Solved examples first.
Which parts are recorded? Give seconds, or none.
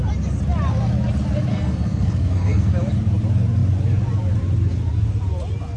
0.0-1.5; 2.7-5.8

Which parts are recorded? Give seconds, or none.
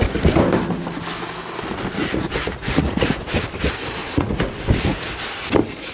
0.0-2.0; 3.2-4.0; 4.6-5.9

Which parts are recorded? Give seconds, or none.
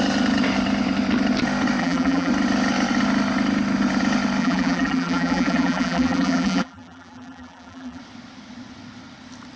0.0-1.8; 2.3-4.4; 8.0-9.6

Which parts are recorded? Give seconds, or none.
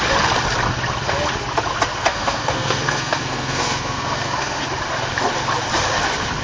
0.0-2.0; 4.6-6.4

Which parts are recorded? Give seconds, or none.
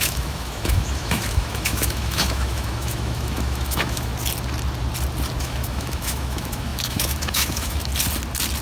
4.1-5.4; 7.9-8.6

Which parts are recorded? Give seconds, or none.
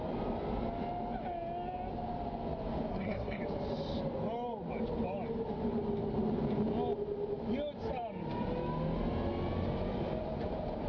0.0-2.9; 3.4-10.9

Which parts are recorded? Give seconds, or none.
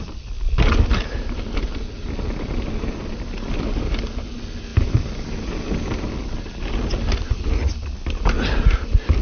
0.0-9.2